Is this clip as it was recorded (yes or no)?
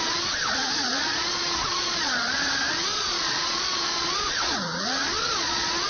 no